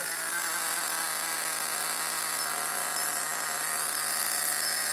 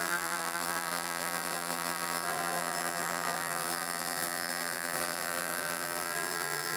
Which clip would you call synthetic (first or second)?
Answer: second